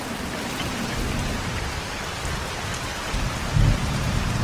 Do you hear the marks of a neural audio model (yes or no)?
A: no